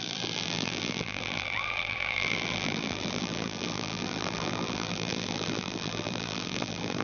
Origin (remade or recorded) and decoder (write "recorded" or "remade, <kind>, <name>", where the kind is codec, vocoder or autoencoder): remade, vocoder, BigVGAN v2